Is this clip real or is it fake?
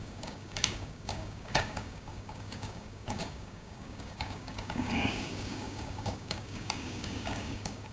fake